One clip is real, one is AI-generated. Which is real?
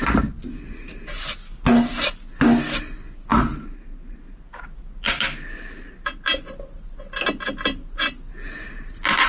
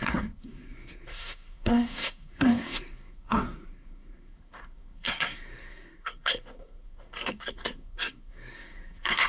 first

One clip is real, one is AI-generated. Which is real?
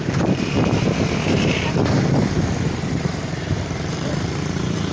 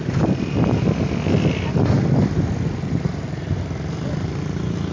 second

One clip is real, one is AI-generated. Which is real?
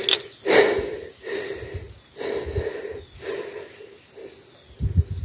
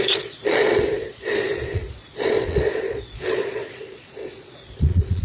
first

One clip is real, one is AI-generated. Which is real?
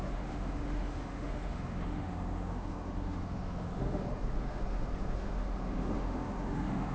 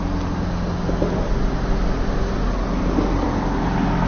second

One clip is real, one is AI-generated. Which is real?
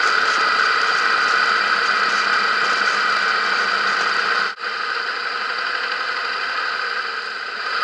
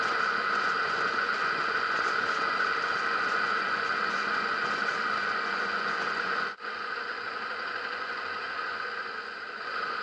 first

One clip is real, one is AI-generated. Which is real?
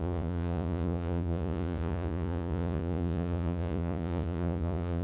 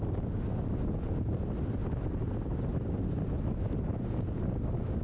second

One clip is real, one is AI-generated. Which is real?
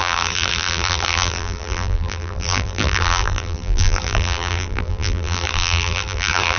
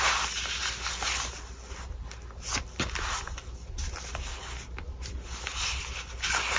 second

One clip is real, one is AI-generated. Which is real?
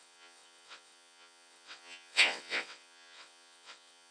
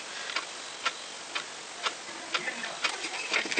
second